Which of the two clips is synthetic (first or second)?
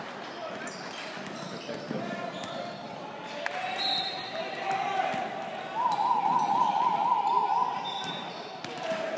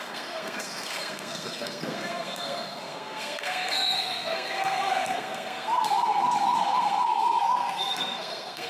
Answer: second